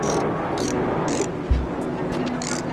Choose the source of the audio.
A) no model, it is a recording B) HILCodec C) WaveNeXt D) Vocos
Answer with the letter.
A